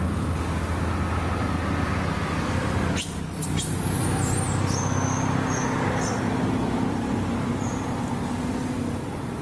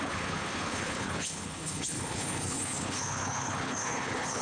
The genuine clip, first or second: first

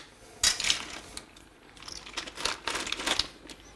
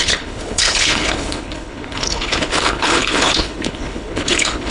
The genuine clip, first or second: first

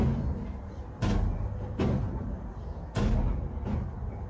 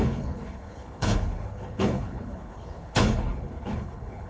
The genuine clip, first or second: first